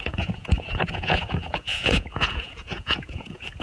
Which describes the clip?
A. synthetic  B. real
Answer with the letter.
A